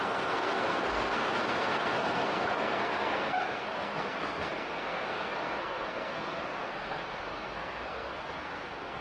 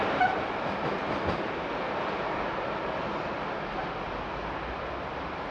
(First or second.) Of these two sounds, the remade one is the first